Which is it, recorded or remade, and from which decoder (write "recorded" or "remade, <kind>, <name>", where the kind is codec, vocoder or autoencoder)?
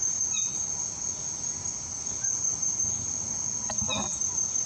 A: recorded